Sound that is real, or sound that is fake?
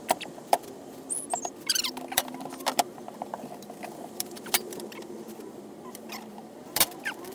fake